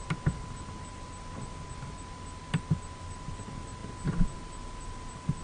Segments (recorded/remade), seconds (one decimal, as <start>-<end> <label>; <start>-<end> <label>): 0.0-5.4 recorded